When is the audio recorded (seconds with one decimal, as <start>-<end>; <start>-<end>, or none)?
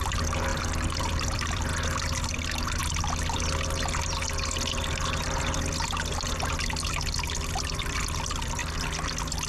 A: 1.7-2.3; 2.8-7.8; 8.6-9.5